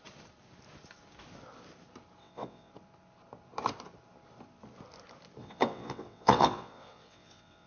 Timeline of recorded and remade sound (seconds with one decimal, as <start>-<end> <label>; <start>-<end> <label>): 0.0-2.2 recorded; 2.2-2.7 remade; 2.7-5.4 recorded; 5.4-7.7 remade